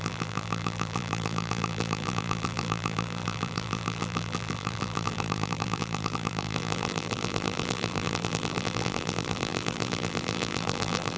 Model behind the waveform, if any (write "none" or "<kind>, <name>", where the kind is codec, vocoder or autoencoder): vocoder, BigVGAN v2